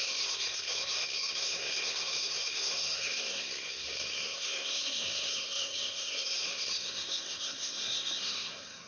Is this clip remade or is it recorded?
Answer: remade